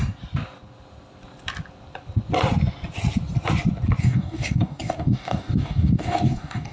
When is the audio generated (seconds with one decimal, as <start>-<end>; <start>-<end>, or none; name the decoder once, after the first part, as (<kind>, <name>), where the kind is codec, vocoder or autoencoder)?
4.0-6.7 (codec, DAC)